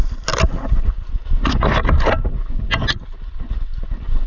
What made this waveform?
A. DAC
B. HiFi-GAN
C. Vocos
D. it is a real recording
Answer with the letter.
D